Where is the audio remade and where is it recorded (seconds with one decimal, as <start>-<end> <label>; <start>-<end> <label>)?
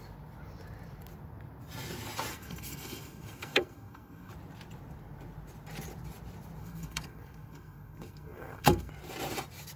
0.0-2.3 recorded; 2.3-4.3 remade; 4.3-6.6 recorded; 6.6-8.9 remade; 8.9-9.8 recorded